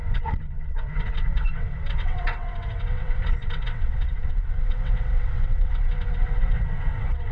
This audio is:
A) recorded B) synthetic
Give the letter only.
B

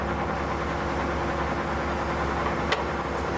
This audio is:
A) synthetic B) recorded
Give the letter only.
B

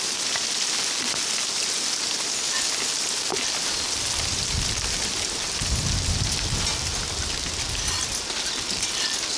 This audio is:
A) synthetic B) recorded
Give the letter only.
B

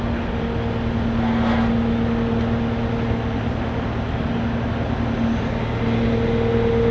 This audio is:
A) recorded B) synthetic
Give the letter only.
A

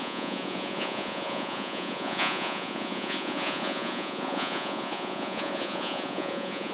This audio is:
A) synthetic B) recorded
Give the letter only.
A